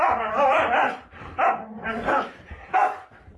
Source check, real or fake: fake